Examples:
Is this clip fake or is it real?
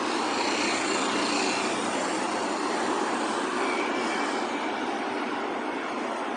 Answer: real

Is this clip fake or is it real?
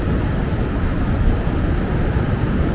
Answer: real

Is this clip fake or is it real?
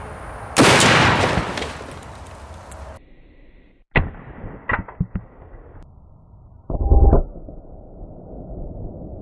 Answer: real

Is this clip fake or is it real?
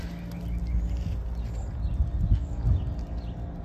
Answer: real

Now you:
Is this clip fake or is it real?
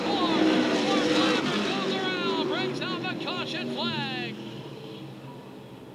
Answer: real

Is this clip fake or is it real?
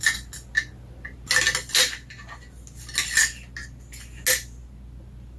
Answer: real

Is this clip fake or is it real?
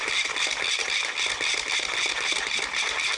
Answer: real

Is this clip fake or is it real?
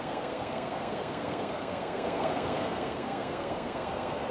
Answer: fake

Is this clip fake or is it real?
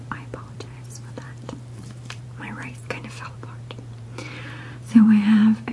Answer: fake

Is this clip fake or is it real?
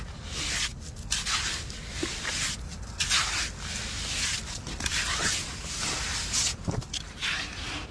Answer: real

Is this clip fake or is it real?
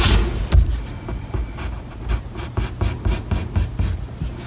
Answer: real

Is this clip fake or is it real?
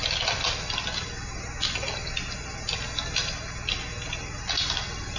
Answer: real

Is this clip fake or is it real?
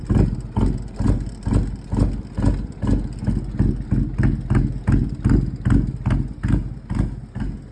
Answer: real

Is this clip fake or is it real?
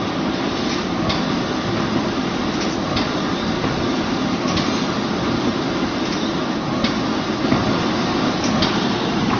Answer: real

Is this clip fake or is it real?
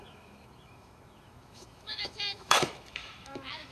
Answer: fake